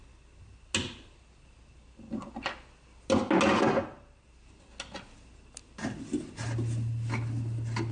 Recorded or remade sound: recorded